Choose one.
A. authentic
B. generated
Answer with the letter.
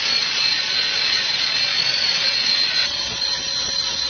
B